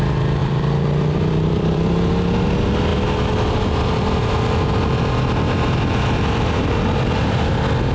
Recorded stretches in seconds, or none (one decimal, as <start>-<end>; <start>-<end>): 0.0-0.4; 1.9-7.9